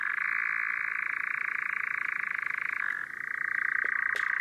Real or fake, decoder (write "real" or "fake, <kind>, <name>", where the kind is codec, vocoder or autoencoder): real